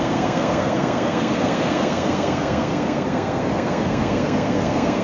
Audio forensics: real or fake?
fake